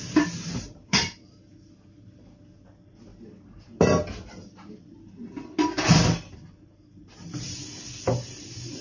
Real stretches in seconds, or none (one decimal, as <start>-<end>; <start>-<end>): 0.0-8.8